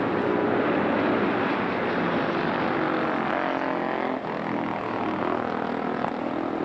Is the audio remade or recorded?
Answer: recorded